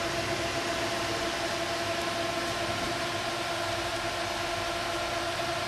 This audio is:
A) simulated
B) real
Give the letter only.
B